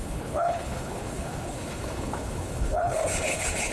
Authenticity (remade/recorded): remade